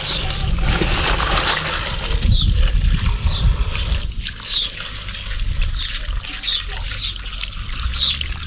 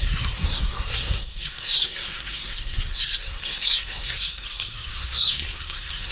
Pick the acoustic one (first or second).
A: first